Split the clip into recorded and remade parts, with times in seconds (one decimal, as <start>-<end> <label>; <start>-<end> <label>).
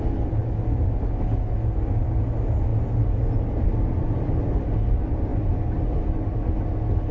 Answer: 0.0-7.1 recorded